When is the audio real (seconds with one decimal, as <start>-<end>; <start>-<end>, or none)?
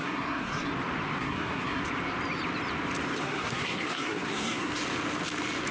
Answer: 0.7-1.2; 1.8-3.2; 4.7-5.7